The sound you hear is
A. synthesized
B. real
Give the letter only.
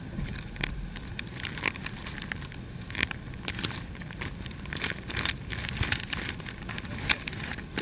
A